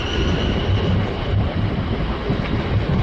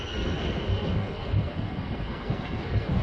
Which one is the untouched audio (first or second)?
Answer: first